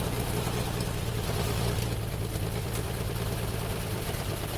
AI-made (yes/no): yes